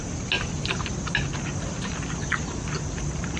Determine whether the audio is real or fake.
real